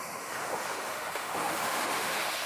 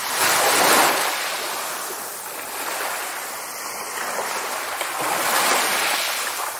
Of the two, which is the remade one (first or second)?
first